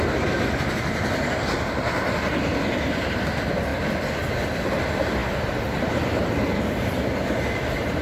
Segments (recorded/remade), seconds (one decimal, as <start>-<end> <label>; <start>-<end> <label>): 0.0-8.0 recorded

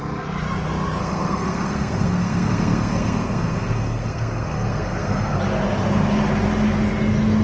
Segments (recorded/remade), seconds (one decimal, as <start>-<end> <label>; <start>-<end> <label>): 0.0-1.0 recorded; 1.0-5.4 remade; 5.4-7.4 recorded

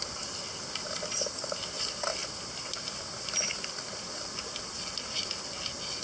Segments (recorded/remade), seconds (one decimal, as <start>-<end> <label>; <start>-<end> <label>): 0.0-6.0 recorded